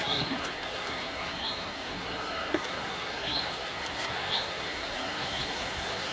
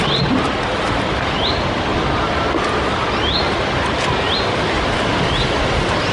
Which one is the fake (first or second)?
first